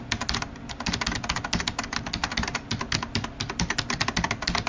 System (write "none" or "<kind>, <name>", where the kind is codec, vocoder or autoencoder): none